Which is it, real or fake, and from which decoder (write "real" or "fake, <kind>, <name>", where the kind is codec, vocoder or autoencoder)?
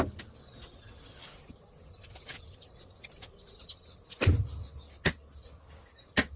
real